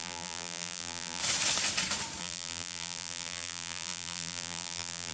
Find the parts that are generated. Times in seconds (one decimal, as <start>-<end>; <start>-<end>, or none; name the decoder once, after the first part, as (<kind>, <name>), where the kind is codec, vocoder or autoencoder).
0.0-1.2 (vocoder, BigVGAN v2); 2.2-5.1